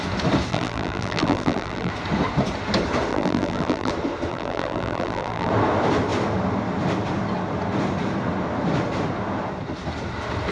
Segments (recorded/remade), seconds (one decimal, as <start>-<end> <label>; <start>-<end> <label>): 0.0-0.5 recorded; 0.5-1.9 remade; 1.9-3.1 recorded; 3.1-3.9 remade; 3.9-4.3 recorded; 4.3-5.5 remade; 5.5-10.5 recorded